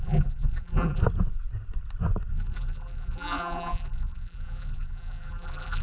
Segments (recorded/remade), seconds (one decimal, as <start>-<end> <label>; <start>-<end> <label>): 0.0-1.0 remade; 1.0-2.3 recorded; 2.3-5.8 remade